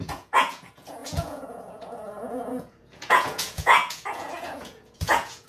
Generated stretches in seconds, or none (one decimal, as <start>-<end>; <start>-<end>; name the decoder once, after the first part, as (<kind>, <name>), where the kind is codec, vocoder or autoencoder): 0.0-5.5 (vocoder, Vocos)